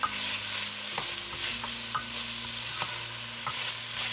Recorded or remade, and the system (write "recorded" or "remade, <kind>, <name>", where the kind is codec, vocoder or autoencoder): recorded